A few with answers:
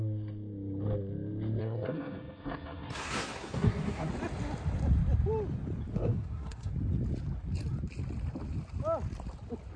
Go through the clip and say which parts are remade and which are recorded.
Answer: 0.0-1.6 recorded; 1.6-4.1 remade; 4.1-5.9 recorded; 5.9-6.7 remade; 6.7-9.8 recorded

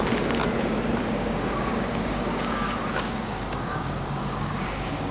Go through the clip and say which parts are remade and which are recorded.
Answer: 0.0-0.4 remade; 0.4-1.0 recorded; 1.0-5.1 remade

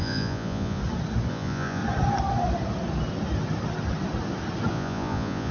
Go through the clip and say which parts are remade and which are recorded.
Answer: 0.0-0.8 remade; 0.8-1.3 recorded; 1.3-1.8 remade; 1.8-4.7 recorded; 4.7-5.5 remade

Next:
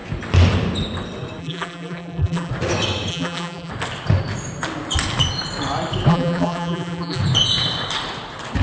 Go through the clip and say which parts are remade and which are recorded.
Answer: 0.0-1.4 recorded; 1.4-2.5 remade; 2.5-3.1 recorded; 3.1-3.7 remade; 3.7-6.1 recorded; 6.1-7.2 remade; 7.2-8.6 recorded

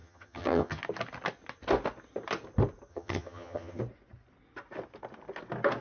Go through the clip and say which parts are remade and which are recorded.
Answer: 0.0-0.8 remade; 0.8-2.9 recorded; 2.9-3.8 remade; 3.8-5.8 recorded

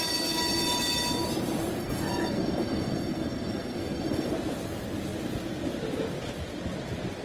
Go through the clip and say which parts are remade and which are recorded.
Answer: 0.0-1.8 recorded; 1.8-4.3 remade; 4.3-7.2 recorded

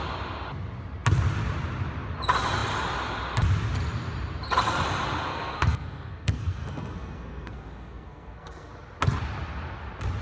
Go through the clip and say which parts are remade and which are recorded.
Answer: 0.0-5.3 recorded; 5.3-8.7 remade; 8.7-10.2 recorded

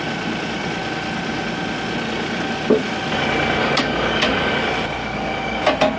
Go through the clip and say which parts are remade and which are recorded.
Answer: 0.0-3.6 recorded; 3.6-4.5 remade; 4.5-5.0 recorded; 5.0-5.6 remade; 5.6-6.0 recorded